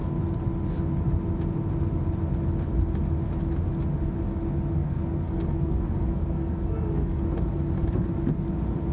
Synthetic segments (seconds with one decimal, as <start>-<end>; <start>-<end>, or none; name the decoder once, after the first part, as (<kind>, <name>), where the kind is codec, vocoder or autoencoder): 4.8-7.2 (codec, SNAC)